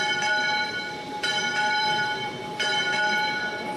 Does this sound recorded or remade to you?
remade